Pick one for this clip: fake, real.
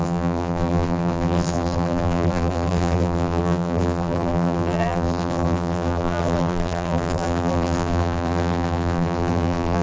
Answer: fake